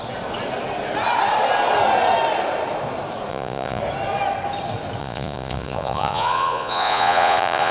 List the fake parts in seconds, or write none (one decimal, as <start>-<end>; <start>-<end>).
3.3-3.8; 5.0-7.7